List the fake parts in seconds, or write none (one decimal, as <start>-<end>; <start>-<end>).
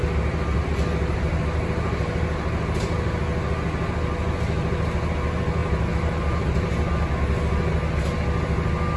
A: 1.1-3.2; 5.6-7.1